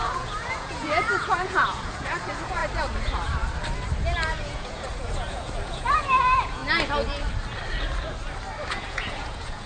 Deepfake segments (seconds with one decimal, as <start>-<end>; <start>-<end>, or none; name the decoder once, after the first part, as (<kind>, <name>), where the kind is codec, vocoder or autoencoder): 0.0-2.6 (vocoder, Vocos); 4.4-6.6; 8.7-9.7

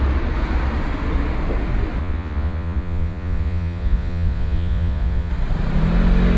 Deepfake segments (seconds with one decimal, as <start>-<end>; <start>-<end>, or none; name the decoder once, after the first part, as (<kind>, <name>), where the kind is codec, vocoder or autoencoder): 2.0-5.3 (vocoder, Vocos)

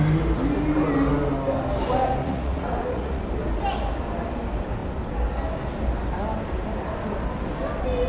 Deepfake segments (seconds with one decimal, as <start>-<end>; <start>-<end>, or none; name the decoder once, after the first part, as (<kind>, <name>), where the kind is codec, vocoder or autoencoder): 2.2-3.2 (vocoder, Vocos)

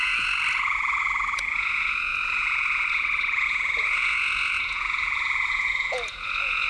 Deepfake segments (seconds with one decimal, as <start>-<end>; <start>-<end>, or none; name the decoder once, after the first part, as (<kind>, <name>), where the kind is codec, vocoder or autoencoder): 0.0-6.7 (vocoder, Vocos)

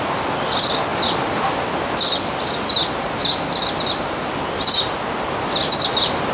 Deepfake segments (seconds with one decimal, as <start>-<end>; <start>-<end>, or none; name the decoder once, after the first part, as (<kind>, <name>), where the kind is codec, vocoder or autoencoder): none

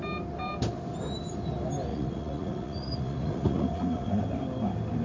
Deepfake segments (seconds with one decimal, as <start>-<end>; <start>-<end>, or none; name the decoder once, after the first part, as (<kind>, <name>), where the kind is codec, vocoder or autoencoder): 1.9-4.2 (vocoder, Vocos)

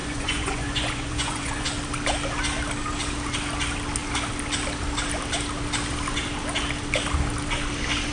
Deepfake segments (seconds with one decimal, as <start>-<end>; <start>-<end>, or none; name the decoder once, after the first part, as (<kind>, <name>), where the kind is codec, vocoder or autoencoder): 0.0-1.7 (vocoder, Vocos)